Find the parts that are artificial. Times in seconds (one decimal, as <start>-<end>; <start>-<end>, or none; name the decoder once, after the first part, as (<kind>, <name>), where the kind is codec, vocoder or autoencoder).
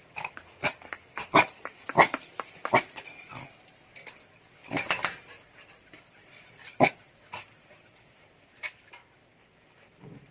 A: 0.0-10.3 (vocoder, BigVGAN v2)